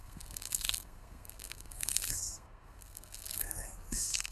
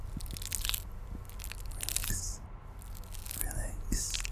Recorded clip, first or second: second